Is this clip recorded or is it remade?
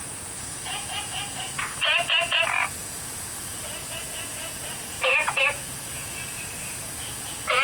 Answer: remade